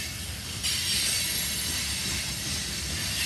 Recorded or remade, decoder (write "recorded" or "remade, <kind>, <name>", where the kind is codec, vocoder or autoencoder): recorded